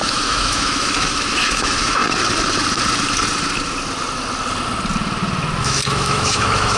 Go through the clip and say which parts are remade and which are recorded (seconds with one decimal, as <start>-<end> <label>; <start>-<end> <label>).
0.0-2.0 remade; 2.0-5.6 recorded; 5.6-6.8 remade